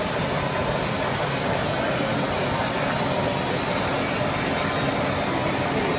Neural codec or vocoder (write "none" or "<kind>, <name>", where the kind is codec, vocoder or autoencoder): none